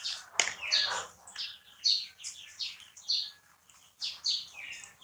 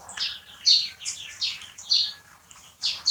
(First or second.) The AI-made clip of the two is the second